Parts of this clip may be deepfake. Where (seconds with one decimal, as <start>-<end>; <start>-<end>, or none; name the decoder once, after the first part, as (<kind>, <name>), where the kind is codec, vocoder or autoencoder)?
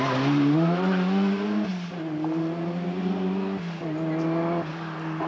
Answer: none